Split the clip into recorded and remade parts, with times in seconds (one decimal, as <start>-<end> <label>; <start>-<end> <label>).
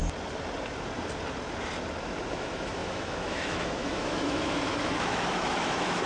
0.0-2.3 recorded; 2.3-6.1 remade